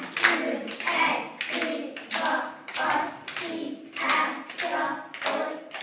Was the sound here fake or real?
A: real